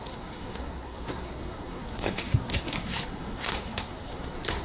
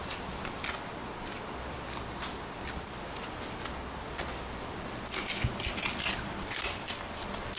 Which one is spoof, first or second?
first